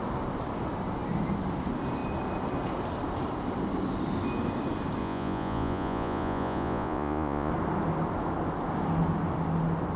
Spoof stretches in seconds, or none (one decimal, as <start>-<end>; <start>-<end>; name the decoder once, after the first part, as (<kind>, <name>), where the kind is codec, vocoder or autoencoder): 5.0-7.5 (vocoder, Vocos)